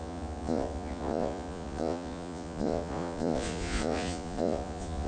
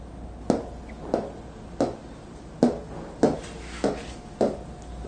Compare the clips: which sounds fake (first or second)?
first